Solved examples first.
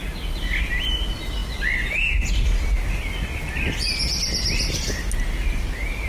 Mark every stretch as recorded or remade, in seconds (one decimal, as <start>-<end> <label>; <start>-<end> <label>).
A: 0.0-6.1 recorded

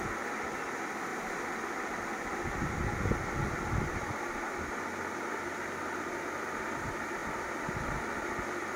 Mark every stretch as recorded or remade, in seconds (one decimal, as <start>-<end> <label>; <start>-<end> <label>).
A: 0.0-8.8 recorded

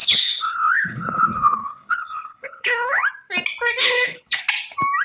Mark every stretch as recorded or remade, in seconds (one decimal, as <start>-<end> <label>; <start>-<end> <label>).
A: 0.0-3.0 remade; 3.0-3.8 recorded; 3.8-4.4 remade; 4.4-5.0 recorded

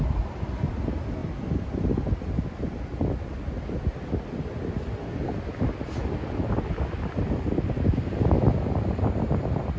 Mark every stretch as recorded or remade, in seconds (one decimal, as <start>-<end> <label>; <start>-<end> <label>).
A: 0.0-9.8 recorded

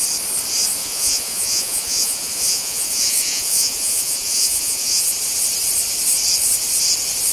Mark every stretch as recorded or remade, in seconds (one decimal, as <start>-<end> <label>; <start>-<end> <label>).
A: 0.0-0.8 recorded; 0.8-5.0 remade; 5.0-7.3 recorded